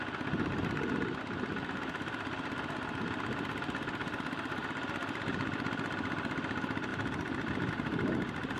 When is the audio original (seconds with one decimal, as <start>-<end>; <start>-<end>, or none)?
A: 0.0-5.0; 6.3-8.6

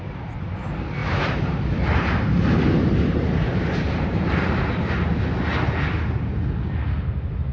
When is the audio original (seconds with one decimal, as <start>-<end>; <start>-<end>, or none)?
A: 0.0-1.0; 4.9-7.5

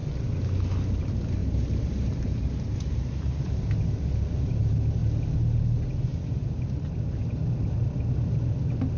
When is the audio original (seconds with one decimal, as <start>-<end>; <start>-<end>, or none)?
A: 0.0-1.4; 3.7-6.1; 6.9-9.0